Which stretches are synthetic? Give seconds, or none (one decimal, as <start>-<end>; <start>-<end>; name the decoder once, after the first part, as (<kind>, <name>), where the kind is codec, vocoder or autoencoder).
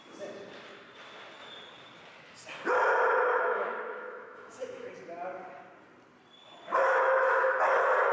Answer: 3.3-4.9 (autoencoder, DAC-VAE); 6.8-7.4